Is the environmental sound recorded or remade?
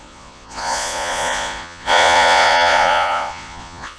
remade